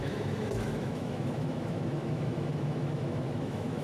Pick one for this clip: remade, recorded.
remade